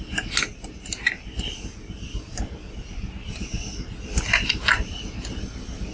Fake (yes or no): no